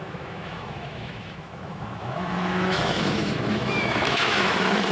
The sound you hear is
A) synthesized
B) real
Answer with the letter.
A